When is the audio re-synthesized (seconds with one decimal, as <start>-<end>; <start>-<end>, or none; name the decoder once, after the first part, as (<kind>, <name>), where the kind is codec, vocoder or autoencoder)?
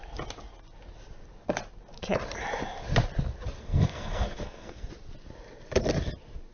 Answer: 3.6-4.9 (codec, SNAC)